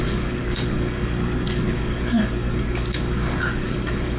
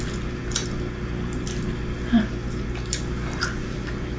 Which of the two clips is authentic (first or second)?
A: second